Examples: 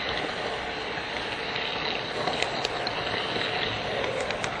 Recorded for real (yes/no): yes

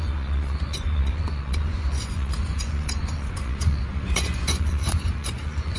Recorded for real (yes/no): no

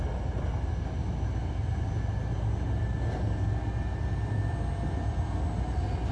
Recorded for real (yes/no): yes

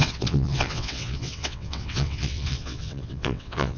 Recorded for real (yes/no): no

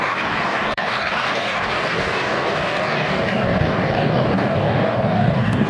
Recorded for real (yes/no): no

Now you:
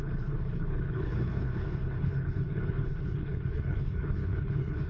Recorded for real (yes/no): no